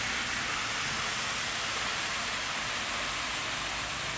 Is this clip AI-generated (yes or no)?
no